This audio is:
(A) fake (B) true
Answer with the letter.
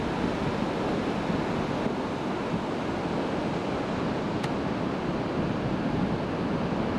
B